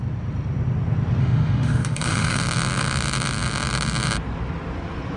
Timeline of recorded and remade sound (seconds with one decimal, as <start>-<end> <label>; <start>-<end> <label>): 0.0-1.2 recorded; 1.2-2.4 remade; 2.4-5.2 recorded